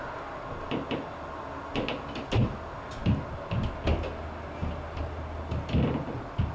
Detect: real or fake real